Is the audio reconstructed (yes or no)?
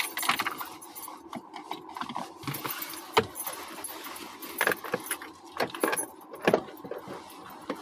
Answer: no